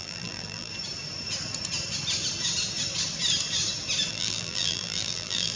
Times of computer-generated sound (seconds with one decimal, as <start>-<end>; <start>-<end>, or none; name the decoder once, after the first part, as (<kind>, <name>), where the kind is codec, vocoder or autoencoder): 0.0-0.7 (vocoder, BigVGAN v2); 4.1-5.6